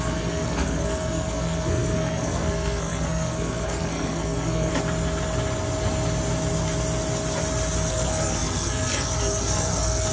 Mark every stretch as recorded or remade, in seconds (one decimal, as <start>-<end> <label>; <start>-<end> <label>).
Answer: 0.0-4.7 remade; 4.7-7.9 recorded; 7.9-10.1 remade